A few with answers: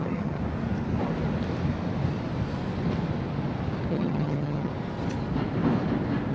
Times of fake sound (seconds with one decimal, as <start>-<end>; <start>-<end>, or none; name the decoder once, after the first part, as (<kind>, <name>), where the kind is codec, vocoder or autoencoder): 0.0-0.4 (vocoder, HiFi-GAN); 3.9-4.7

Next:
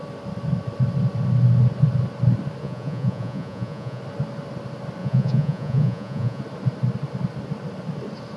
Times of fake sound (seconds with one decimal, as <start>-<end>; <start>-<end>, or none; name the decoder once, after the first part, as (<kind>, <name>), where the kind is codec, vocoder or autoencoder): 2.6-4.0 (vocoder, Vocos); 5.0-6.4

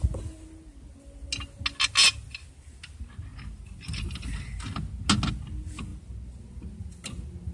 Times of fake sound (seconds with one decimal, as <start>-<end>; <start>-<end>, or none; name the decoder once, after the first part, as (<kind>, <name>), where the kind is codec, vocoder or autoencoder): none